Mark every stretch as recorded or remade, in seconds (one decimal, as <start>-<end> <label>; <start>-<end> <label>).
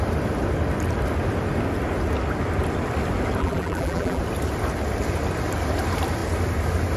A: 0.0-3.4 recorded; 3.4-4.2 remade; 4.2-7.0 recorded